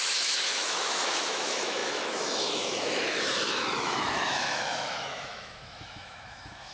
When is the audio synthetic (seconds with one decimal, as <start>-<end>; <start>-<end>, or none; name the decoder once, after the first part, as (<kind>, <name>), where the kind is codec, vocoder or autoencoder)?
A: 0.0-6.7 (autoencoder, DAC-VAE)